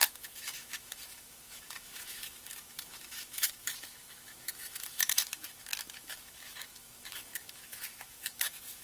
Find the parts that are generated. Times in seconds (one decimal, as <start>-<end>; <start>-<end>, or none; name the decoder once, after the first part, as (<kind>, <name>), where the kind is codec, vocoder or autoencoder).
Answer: 0.0-8.8 (autoencoder, DAC-VAE)